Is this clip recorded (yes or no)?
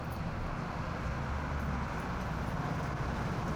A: yes